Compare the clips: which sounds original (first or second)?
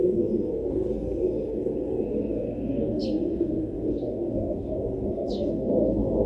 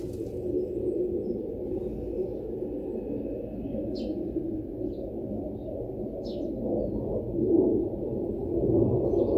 second